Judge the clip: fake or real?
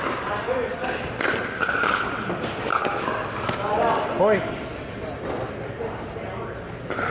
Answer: real